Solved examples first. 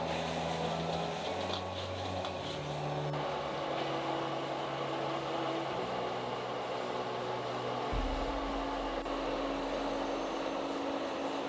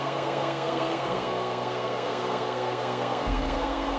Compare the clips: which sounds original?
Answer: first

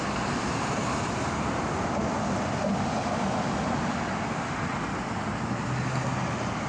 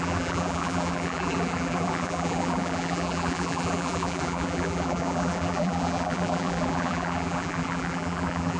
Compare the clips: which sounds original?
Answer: first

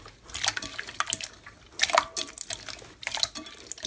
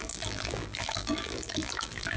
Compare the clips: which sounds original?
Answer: first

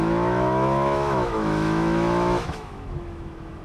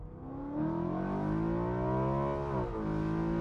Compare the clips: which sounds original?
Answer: second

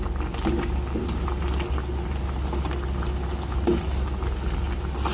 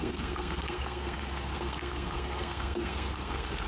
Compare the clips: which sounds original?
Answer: first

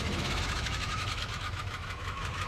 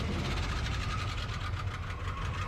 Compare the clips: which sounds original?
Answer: second